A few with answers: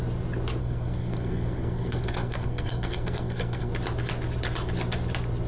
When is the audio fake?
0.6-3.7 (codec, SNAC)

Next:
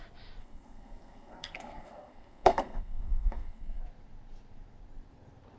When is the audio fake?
0.4-3.8 (codec, SNAC)

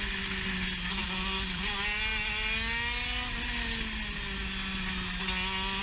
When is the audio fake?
1.0-1.6 (vocoder, BigVGAN v2)

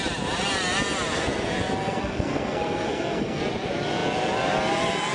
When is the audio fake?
1.8-3.4 (codec, SNAC)

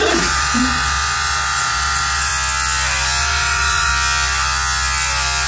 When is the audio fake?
0.0-2.3 (vocoder, Vocos); 3.2-3.9

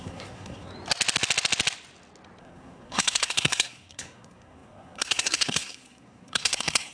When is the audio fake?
0.0-0.7 (codec, SNAC); 2.4-6.9

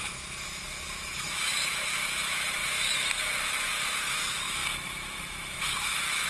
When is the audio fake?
0.0-6.3 (autoencoder, DAC-VAE)